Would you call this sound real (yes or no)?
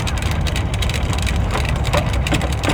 yes